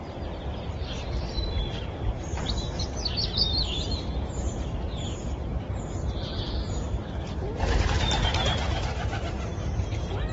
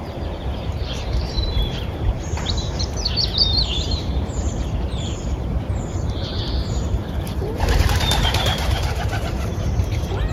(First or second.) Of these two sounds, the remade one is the second